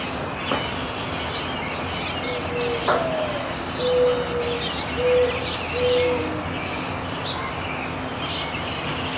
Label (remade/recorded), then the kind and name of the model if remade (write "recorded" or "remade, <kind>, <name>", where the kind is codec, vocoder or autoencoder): recorded